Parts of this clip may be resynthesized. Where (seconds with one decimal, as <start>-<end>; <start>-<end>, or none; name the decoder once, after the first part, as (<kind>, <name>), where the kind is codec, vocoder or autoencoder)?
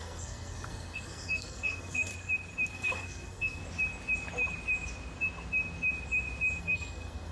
0.0-2.1 (codec, SNAC); 2.7-3.6; 6.6-7.3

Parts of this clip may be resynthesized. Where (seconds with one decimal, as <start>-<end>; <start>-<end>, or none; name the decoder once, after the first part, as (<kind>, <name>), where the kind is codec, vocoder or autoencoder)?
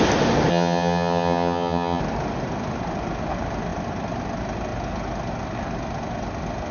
0.5-2.0 (vocoder, HiFi-GAN)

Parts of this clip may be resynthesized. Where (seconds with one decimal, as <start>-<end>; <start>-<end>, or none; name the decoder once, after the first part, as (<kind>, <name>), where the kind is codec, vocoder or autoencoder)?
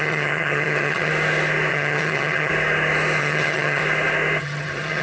0.0-1.1 (vocoder, HiFi-GAN); 1.7-2.5; 3.2-3.8; 4.4-5.0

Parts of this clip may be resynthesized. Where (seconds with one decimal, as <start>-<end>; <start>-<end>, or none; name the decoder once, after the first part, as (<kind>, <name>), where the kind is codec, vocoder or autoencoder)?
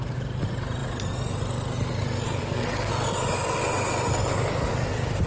2.4-2.9 (codec, SNAC)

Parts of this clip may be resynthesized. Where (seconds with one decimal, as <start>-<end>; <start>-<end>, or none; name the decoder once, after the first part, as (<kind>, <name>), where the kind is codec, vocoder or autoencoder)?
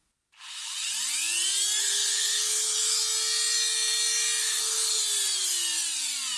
1.8-3.0 (codec, HILCodec); 4.4-5.0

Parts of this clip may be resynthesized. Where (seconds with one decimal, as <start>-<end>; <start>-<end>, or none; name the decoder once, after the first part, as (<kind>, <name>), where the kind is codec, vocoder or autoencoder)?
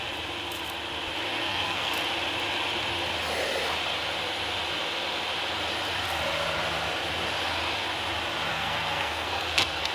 1.4-1.9 (codec, SNAC); 8.5-9.9